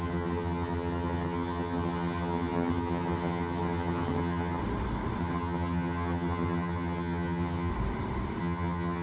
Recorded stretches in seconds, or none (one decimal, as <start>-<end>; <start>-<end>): 4.6-5.2; 7.7-8.4